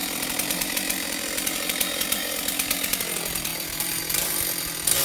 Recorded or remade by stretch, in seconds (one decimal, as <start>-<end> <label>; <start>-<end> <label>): 0.0-3.0 remade; 3.0-3.5 recorded; 3.5-4.0 remade; 4.0-5.0 recorded